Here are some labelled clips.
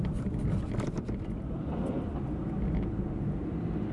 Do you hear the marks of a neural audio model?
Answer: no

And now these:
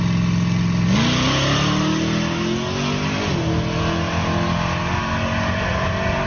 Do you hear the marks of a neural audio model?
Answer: no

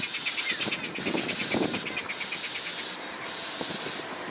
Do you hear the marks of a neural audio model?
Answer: no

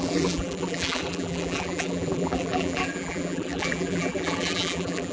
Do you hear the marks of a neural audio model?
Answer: yes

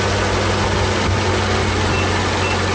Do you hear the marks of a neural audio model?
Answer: no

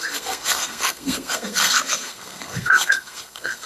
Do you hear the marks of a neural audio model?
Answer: yes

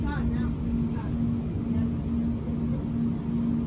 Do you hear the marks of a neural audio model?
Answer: no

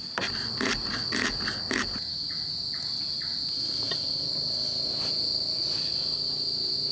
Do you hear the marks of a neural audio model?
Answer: no